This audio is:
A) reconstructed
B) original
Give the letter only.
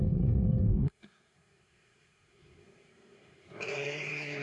A